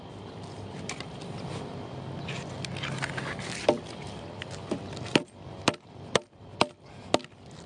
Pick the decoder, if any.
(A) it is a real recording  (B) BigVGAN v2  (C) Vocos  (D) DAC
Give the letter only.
A